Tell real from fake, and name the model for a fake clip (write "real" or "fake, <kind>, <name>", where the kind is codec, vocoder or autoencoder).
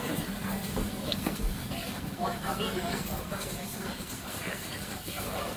fake, codec, SNAC